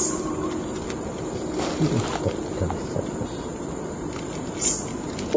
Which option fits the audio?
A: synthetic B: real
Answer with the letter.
B